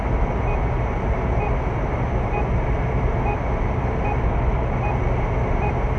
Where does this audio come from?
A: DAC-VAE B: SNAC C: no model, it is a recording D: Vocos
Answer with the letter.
C